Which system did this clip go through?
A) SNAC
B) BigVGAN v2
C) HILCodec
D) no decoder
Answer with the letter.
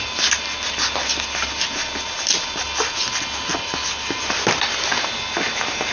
D